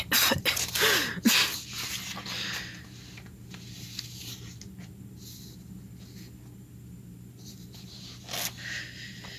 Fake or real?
real